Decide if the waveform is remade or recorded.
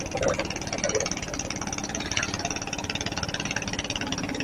recorded